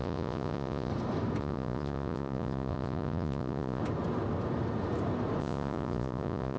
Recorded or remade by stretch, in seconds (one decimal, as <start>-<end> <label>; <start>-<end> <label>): 0.0-0.9 remade; 0.9-1.4 recorded; 1.4-3.8 remade; 3.8-5.4 recorded; 5.4-6.6 remade